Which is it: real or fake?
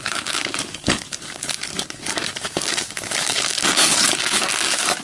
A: fake